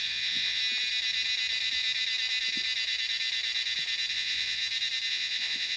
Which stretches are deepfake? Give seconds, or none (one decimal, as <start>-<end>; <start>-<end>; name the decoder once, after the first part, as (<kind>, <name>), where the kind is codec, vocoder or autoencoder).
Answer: 0.0-0.6 (vocoder, Vocos); 4.1-4.6; 5.1-5.8